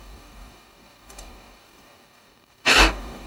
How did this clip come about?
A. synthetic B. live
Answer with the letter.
A